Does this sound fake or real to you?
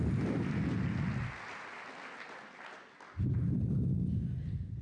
real